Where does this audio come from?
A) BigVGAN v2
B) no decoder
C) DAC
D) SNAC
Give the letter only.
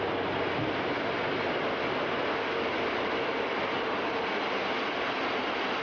B